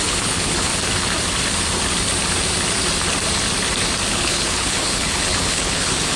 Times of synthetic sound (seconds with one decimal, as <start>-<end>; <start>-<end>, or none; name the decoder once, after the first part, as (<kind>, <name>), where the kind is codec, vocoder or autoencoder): 0.0-0.7 (codec, HILCodec); 4.1-6.2